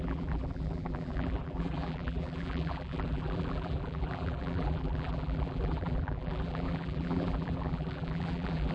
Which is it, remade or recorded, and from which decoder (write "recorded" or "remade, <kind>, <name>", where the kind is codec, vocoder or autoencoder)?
remade, vocoder, BigVGAN v2